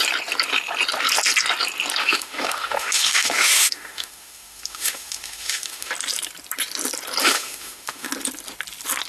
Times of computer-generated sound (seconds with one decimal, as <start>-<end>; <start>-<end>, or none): 2.0-5.9; 7.2-8.1